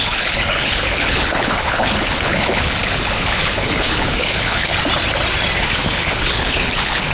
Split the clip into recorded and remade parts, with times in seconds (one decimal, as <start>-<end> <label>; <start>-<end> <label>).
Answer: 0.0-4.7 remade; 4.7-5.6 recorded; 5.6-7.1 remade

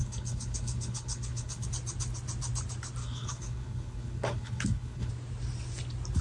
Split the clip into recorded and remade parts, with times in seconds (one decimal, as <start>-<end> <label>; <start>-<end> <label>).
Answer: 0.0-1.7 remade; 1.7-3.0 recorded; 3.0-5.1 remade; 5.1-6.2 recorded

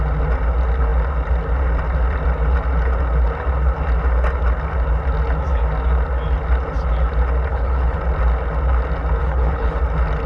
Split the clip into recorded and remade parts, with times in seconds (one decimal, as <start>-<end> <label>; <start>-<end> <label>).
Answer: 0.0-7.5 recorded; 7.5-8.0 remade; 8.0-9.2 recorded; 9.2-9.8 remade; 9.8-10.3 recorded

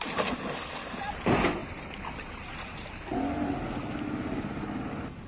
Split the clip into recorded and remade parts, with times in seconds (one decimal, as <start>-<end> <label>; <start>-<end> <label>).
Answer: 0.0-5.3 recorded

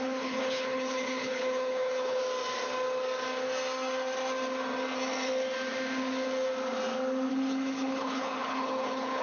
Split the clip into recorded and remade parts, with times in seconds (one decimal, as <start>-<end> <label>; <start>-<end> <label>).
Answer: 0.0-2.2 remade; 2.2-7.3 recorded; 7.3-9.2 remade

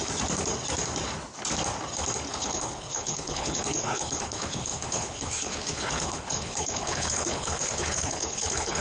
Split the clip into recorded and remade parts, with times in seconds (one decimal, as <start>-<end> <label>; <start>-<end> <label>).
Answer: 0.0-2.3 recorded; 2.3-8.8 remade